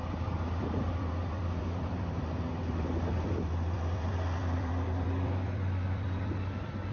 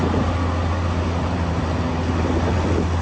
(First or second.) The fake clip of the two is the first